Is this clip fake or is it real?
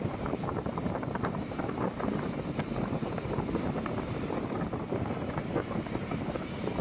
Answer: fake